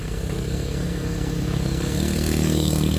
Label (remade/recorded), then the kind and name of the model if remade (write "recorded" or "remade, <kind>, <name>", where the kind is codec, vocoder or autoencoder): remade, codec, SNAC